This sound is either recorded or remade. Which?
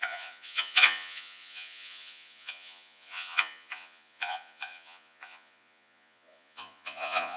remade